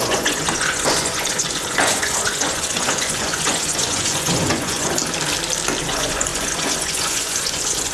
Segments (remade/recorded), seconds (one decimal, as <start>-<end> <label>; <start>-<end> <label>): 0.0-5.0 remade; 5.0-5.8 recorded; 5.8-7.9 remade